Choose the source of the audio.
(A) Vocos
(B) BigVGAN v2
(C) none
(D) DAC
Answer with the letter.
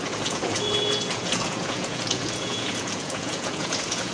A